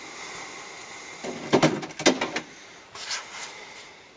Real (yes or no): yes